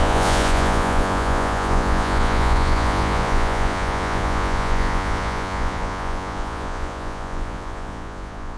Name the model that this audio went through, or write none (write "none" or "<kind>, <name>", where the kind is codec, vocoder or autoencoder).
vocoder, Vocos